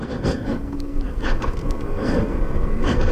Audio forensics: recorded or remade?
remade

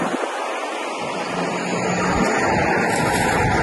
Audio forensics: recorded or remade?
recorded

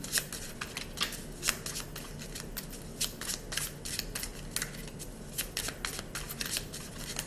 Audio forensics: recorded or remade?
recorded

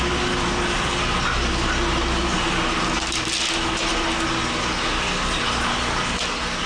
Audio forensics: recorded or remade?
recorded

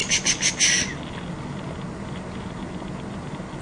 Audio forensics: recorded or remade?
recorded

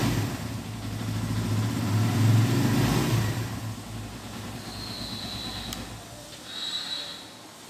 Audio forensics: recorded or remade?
recorded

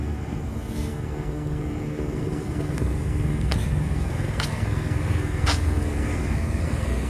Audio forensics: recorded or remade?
remade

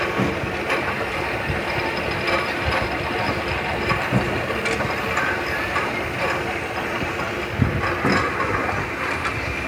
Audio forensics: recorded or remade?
recorded